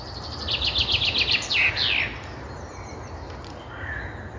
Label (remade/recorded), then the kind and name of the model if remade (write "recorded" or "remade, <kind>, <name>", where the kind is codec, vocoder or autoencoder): recorded